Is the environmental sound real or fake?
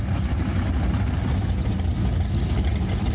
real